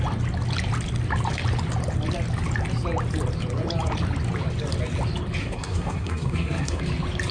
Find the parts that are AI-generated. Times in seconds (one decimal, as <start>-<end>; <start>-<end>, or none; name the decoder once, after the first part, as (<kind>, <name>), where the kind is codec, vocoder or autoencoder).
5.4-6.8 (codec, SNAC)